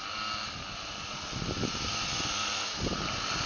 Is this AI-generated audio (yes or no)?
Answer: no